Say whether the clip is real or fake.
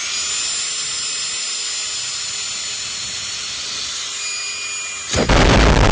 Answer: real